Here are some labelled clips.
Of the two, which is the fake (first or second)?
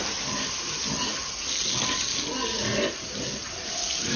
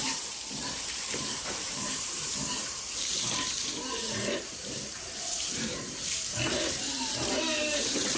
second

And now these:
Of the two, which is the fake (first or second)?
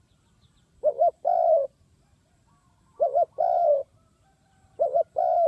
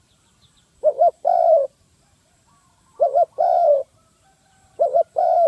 second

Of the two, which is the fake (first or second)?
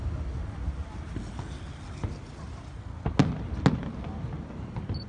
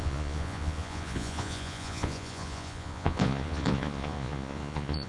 second